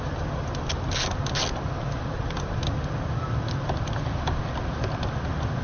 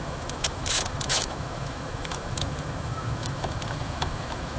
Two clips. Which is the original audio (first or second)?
first